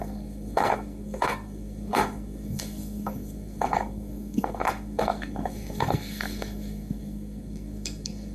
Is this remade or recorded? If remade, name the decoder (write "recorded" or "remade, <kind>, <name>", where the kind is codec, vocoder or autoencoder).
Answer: remade, codec, SNAC